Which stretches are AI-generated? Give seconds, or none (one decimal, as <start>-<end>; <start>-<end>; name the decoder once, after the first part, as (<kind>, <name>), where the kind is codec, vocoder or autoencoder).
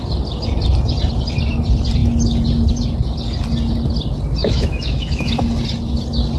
4.4-5.3 (autoencoder, DAC-VAE)